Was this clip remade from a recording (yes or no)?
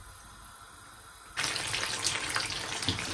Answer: no